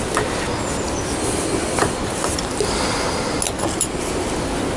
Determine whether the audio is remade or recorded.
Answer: recorded